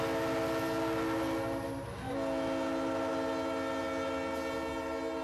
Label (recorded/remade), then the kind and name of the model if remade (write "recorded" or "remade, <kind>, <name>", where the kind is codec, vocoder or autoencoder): recorded